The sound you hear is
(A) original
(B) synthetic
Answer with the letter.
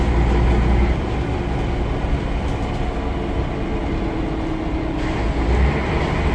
A